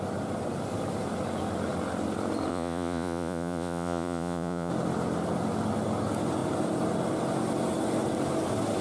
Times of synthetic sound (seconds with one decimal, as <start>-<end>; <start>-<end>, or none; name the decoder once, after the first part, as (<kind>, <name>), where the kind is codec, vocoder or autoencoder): 2.5-4.7 (vocoder, Vocos)